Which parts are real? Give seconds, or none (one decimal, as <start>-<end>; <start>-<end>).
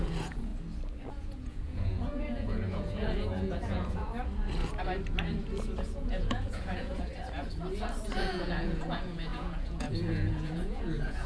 0.5-1.1; 4.1-5.8; 7.1-8.2